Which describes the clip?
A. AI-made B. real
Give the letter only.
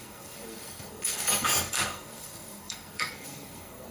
A